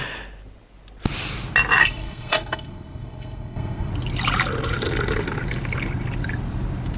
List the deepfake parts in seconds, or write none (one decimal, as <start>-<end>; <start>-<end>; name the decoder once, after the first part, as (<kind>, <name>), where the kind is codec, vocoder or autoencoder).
1.8-3.9 (codec, SNAC)